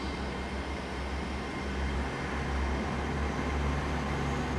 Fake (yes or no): no